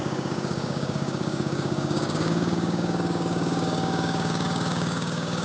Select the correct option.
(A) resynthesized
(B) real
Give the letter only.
A